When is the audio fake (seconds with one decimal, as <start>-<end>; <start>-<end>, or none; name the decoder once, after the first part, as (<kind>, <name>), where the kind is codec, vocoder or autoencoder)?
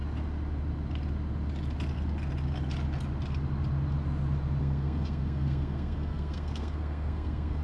4.6-7.6 (codec, SNAC)